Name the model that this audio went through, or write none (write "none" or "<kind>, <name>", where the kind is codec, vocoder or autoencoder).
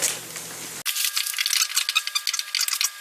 none